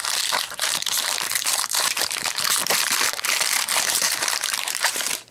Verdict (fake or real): fake